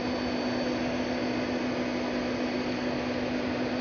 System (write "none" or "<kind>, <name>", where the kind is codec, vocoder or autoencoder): none